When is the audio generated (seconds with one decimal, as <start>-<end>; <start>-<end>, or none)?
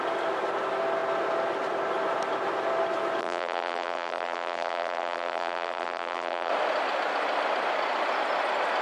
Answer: 3.2-6.5